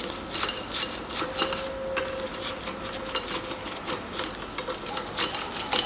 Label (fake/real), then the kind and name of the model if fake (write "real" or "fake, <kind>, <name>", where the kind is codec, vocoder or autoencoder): real